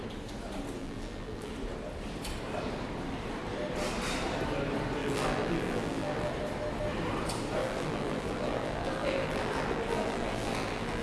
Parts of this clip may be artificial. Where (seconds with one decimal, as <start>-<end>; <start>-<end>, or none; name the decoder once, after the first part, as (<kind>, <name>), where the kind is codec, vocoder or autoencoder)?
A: 0.8-1.5 (vocoder, BigVGAN v2); 5.0-6.3; 7.6-11.0